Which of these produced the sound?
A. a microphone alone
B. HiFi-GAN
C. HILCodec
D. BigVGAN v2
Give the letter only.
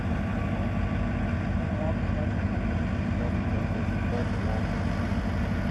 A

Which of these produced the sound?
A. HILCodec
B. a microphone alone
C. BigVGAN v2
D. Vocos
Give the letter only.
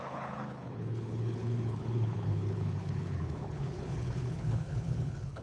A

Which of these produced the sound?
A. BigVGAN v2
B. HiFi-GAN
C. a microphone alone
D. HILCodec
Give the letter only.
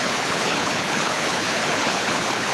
D